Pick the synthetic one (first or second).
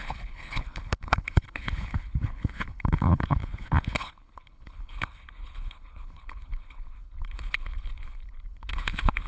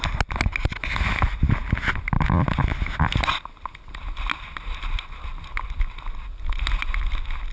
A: first